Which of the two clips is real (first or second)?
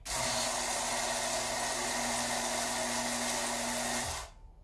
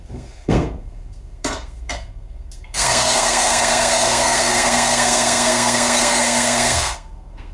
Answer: first